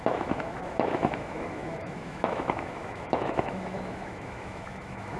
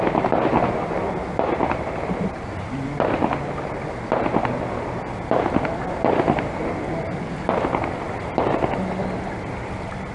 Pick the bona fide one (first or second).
second